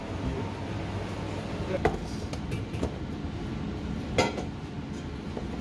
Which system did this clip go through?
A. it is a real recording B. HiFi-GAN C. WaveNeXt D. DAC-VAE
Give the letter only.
A